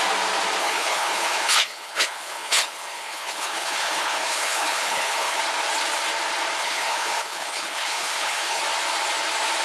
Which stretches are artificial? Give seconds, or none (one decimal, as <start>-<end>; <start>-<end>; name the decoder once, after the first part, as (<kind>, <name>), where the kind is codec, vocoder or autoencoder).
0.6-5.4 (codec, HILCodec); 6.6-8.6